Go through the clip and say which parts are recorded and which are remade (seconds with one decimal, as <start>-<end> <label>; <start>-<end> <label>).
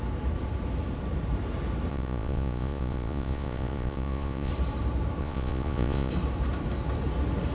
0.0-1.9 recorded; 1.9-4.5 remade; 4.5-5.2 recorded; 5.2-6.1 remade; 6.1-7.5 recorded